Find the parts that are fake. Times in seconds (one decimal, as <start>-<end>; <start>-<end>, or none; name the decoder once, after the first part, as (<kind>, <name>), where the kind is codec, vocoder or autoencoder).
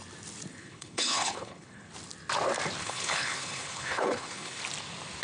0.5-1.9 (codec, HILCodec); 2.8-4.6